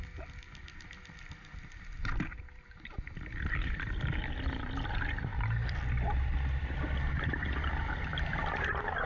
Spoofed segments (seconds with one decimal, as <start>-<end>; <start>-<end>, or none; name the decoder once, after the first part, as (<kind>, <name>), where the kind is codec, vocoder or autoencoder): 0.6-3.5 (vocoder, BigVGAN v2); 5.3-6.8